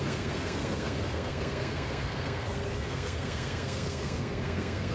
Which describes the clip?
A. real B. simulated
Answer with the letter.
B